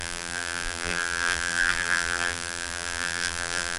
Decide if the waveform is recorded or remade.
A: remade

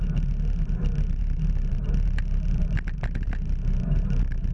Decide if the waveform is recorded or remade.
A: recorded